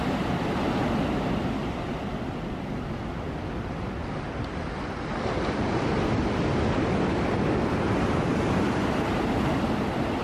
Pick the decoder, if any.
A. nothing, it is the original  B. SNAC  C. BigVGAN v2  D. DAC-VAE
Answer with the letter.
A